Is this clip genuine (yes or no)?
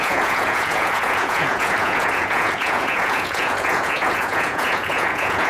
no